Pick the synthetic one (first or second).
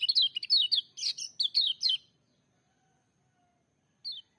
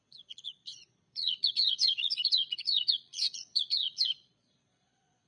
second